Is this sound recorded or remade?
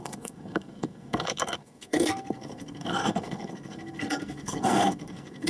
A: remade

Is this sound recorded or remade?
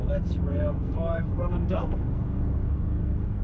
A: remade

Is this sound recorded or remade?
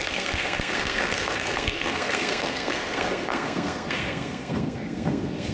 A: remade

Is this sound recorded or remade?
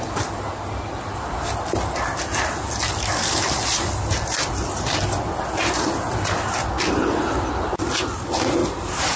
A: recorded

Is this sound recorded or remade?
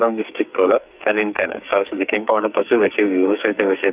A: remade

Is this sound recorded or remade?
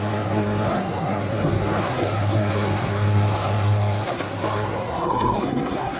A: remade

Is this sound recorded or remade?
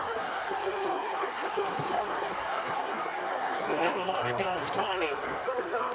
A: remade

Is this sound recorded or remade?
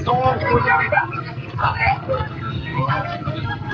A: remade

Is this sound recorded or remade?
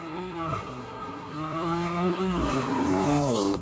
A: remade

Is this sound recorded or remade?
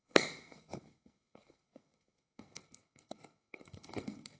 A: remade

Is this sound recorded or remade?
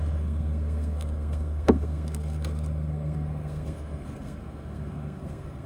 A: remade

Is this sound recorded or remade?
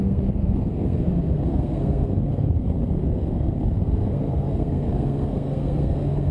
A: remade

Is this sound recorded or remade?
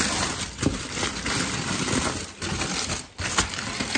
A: recorded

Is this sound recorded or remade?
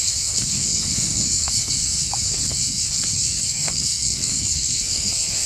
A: remade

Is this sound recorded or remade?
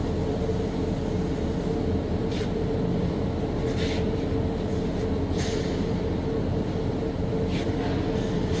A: recorded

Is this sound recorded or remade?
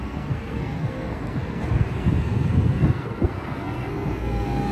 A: remade